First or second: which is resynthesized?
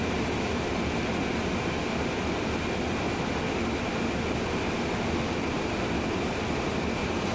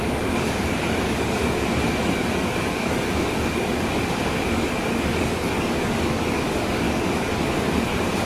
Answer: second